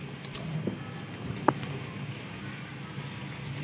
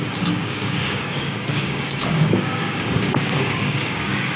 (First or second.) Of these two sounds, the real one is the first